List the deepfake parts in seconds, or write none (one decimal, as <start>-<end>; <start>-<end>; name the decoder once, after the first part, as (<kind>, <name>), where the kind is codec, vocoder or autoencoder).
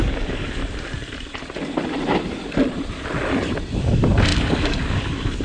0.0-0.6 (codec, DAC); 3.8-5.4